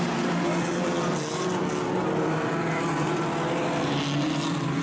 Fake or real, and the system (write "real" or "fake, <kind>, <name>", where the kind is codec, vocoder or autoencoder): fake, vocoder, BigVGAN v2